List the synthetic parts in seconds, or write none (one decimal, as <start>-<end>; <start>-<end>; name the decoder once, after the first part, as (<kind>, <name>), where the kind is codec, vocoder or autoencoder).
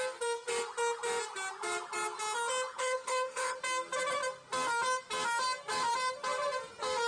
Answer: 2.7-3.6 (codec, HILCodec)